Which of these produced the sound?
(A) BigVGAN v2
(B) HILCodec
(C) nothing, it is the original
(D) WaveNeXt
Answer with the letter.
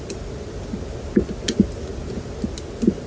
C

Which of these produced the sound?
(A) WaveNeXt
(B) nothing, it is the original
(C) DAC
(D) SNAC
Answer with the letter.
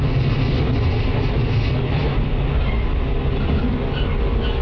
B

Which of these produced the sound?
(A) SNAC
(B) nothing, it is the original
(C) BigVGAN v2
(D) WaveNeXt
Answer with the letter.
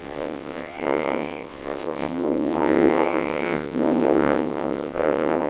D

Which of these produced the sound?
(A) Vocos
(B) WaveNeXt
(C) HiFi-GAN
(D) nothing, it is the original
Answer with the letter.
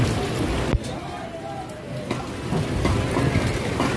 D